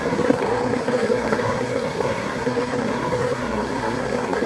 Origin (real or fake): fake